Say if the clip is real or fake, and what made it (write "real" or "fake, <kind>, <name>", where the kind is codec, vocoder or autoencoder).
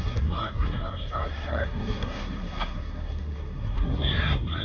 fake, codec, SNAC